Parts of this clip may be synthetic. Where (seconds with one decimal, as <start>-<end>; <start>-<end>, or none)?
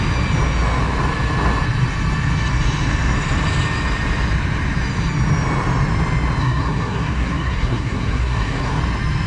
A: 6.4-8.8